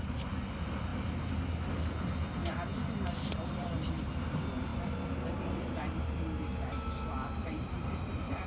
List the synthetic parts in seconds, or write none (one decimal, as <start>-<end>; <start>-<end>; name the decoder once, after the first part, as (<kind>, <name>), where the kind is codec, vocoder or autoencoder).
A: 7.4-8.0 (vocoder, BigVGAN v2)